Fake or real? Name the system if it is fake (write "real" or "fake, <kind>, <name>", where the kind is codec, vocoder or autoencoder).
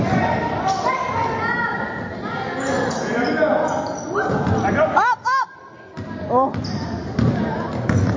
real